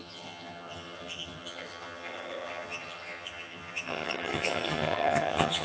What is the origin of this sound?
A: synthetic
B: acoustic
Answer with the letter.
A